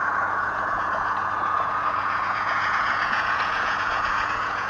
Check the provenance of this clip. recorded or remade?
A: remade